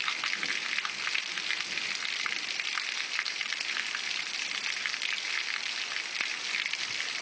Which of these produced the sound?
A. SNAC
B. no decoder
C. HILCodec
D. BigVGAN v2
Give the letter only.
B